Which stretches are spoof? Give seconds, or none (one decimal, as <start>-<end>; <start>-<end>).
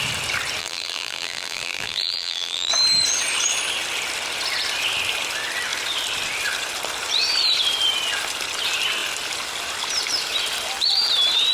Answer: 0.6-2.7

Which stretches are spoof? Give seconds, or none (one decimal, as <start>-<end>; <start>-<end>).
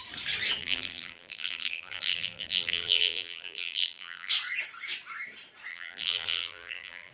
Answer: 0.6-4.3; 5.7-7.1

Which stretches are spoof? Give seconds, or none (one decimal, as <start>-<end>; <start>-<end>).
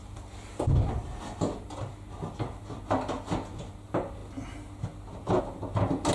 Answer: none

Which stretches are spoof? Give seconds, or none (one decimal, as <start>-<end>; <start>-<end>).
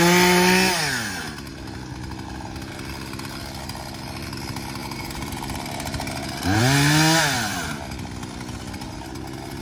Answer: 4.8-6.6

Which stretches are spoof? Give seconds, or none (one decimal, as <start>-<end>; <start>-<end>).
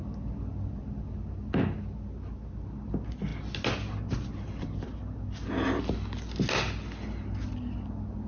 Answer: none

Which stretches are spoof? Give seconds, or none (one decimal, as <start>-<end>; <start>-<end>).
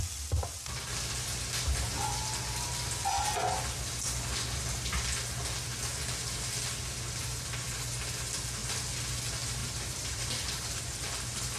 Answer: 9.6-10.8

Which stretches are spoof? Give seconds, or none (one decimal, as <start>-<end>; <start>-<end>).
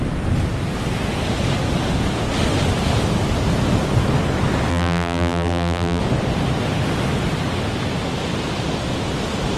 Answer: 4.7-6.0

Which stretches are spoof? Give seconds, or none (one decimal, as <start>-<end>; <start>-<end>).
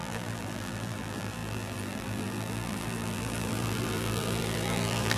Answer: 0.0-5.2